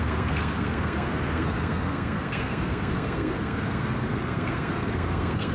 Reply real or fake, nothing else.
fake